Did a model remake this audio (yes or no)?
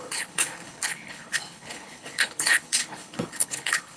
yes